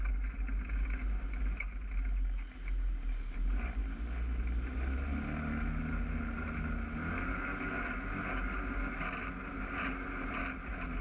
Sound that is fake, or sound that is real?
real